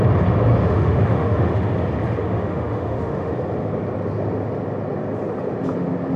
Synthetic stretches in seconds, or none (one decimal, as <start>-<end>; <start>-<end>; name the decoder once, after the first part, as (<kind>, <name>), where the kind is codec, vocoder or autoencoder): 0.5-1.7 (autoencoder, DAC-VAE); 2.2-3.3